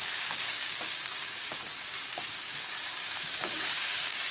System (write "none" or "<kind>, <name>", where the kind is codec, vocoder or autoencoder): codec, DAC